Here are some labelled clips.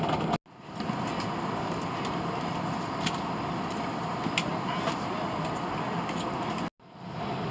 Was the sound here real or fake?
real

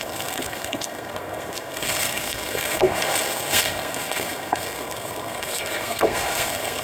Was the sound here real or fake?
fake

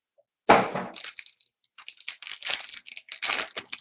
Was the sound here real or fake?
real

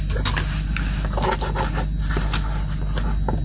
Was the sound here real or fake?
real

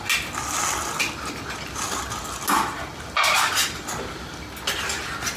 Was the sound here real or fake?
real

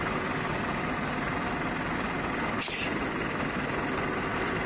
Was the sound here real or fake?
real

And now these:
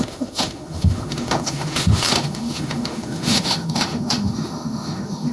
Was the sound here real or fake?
fake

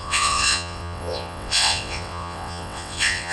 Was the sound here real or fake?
fake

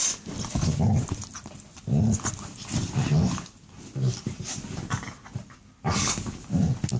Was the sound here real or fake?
real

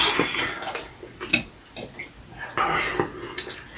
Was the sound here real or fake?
real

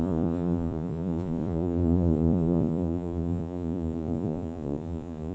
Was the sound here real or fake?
fake